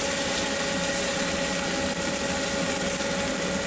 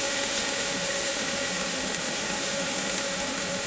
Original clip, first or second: first